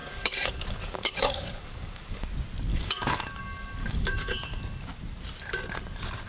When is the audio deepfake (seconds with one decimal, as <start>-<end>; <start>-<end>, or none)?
0.0-2.3; 2.7-3.4; 3.8-4.6

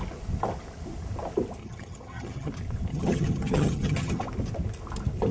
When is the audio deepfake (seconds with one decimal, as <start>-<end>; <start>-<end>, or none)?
1.6-2.5; 2.9-4.2

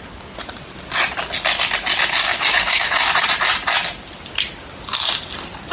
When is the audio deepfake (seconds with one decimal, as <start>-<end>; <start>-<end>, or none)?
2.2-3.1

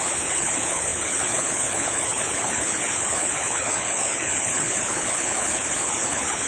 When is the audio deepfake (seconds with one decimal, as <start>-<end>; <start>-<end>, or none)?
0.0-6.5

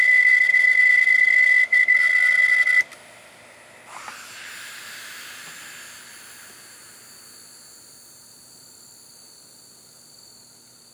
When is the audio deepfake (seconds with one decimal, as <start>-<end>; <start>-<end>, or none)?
0.0-2.0; 4.6-10.9

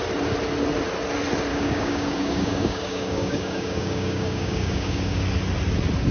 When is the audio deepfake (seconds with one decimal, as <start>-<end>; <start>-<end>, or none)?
1.5-5.2

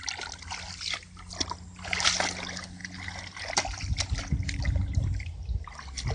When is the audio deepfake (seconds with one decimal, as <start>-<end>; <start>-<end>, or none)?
none